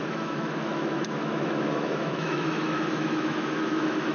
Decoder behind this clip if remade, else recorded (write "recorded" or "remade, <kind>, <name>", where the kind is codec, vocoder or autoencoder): remade, autoencoder, DAC-VAE